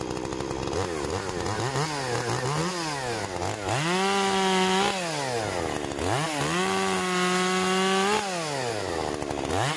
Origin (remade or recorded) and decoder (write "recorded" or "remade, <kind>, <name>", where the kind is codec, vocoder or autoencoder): recorded